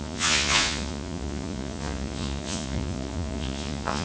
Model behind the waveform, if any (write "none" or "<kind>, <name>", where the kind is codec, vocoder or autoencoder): vocoder, Vocos